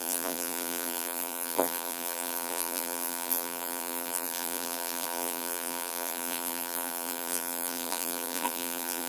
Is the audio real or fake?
fake